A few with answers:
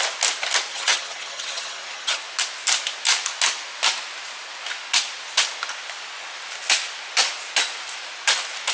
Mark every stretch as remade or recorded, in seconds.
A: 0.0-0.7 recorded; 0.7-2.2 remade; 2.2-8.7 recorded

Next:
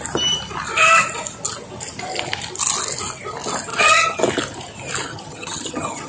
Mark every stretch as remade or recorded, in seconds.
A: 0.0-3.7 recorded; 3.7-4.2 remade; 4.2-5.1 recorded; 5.1-6.1 remade

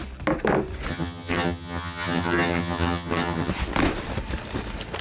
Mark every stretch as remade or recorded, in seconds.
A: 0.0-0.9 recorded; 0.9-3.5 remade; 3.5-5.0 recorded

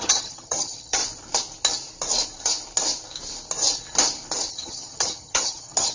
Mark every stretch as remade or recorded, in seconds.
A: 0.0-1.0 remade; 1.0-4.5 recorded; 4.5-5.9 remade

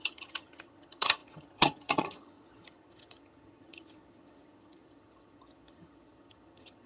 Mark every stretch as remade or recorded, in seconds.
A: 0.0-6.9 remade

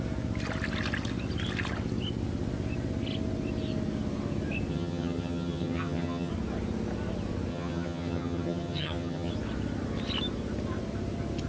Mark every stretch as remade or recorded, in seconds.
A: 0.0-4.7 recorded; 4.7-6.3 remade; 6.3-7.5 recorded; 7.5-9.3 remade; 9.3-11.5 recorded